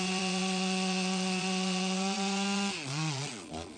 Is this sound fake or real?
fake